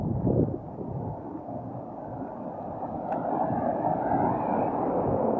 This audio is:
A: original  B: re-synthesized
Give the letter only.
A